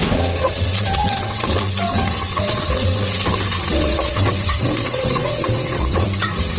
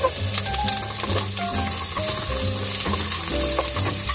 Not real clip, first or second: first